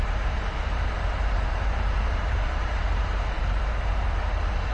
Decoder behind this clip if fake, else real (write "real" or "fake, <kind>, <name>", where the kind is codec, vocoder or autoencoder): fake, vocoder, BigVGAN v2